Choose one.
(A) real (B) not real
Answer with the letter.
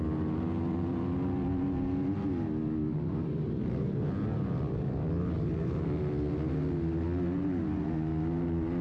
A